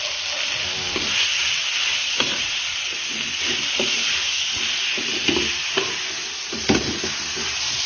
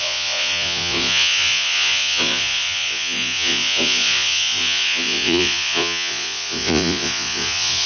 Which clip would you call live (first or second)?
first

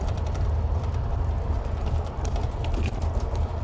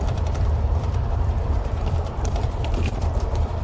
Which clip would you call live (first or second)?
first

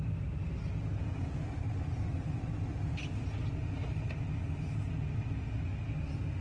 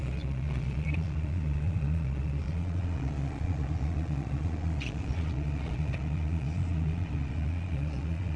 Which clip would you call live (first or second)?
first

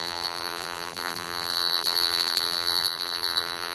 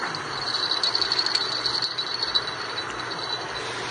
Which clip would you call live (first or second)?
second